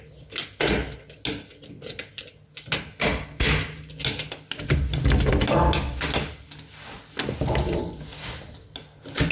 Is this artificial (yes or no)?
no